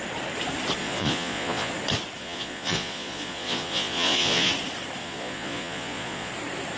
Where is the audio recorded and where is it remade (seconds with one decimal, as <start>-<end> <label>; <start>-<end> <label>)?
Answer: 0.0-0.8 recorded; 0.8-1.7 remade; 1.7-2.2 recorded; 2.2-4.5 remade; 4.5-5.0 recorded; 5.0-6.3 remade; 6.3-6.8 recorded